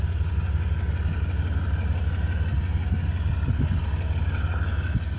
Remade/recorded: recorded